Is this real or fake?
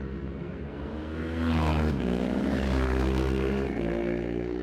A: fake